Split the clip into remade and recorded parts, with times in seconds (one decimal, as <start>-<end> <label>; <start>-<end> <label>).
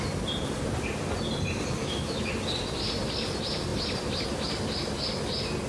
0.0-1.8 recorded; 1.8-2.3 remade; 2.3-5.7 recorded